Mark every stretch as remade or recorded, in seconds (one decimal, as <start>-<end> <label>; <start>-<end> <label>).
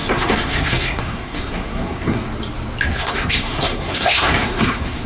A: 0.0-2.2 remade; 2.2-2.9 recorded; 2.9-5.1 remade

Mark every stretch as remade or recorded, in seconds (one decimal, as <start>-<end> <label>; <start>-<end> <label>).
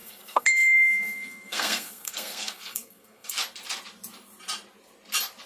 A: 0.0-3.3 remade; 3.3-5.5 recorded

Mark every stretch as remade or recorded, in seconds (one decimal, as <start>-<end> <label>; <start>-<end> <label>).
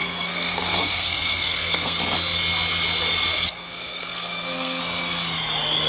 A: 0.0-2.0 remade; 2.0-3.4 recorded; 3.4-4.8 remade; 4.8-5.9 recorded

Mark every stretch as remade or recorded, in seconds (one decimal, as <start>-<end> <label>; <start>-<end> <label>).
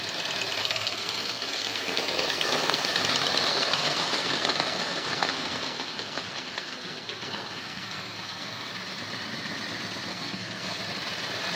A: 0.0-0.6 recorded; 0.6-3.0 remade; 3.0-3.5 recorded; 3.5-8.7 remade; 8.7-10.1 recorded; 10.1-10.8 remade; 10.8-11.6 recorded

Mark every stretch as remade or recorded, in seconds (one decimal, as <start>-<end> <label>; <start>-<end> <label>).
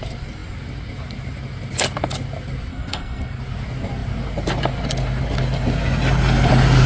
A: 0.0-2.7 recorded; 2.7-3.4 remade; 3.4-6.9 recorded